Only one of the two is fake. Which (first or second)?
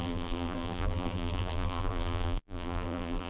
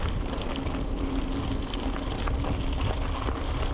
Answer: first